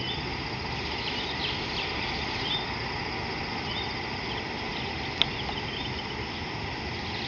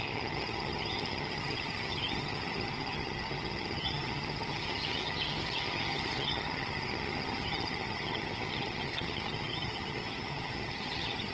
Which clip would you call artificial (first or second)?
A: second